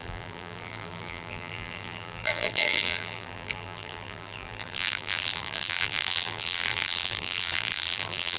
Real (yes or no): no